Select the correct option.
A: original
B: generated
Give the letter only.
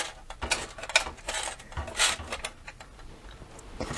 A